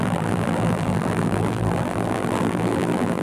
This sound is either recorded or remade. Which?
remade